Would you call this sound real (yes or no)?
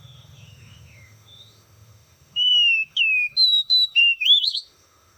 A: no